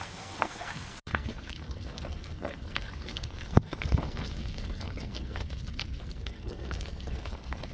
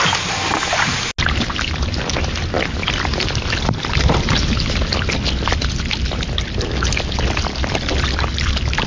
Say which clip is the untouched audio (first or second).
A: second